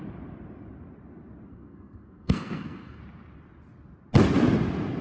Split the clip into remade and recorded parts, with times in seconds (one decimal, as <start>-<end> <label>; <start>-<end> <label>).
0.0-1.5 recorded; 1.5-3.0 remade; 3.0-5.0 recorded

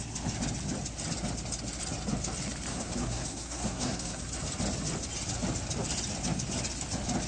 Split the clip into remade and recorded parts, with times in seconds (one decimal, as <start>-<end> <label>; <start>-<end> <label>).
0.0-2.7 recorded; 2.7-4.2 remade; 4.2-7.3 recorded

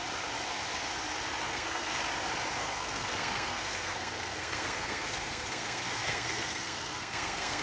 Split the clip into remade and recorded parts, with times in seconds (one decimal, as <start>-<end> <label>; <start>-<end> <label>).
0.0-1.4 recorded; 1.4-2.0 remade; 2.0-2.6 recorded; 2.6-7.6 remade

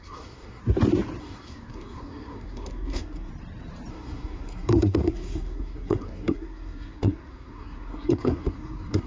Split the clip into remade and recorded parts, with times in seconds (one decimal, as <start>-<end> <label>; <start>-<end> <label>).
0.0-0.6 remade; 0.6-1.2 recorded; 1.2-3.3 remade; 3.3-3.9 recorded; 3.9-9.1 remade

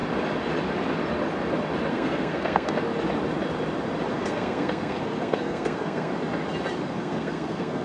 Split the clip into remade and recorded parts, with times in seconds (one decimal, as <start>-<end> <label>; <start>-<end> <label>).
0.0-1.9 recorded; 1.9-2.8 remade; 2.8-4.1 recorded; 4.1-6.1 remade; 6.1-6.8 recorded; 6.8-7.8 remade